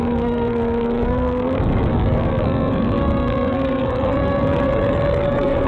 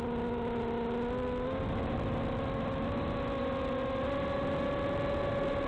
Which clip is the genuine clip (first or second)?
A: second